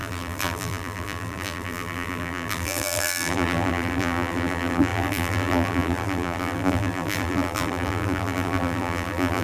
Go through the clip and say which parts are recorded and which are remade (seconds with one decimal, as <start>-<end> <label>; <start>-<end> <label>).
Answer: 0.0-9.4 remade